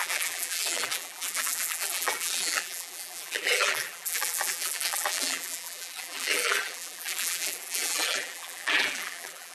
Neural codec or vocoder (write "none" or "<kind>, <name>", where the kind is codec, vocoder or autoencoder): vocoder, BigVGAN v2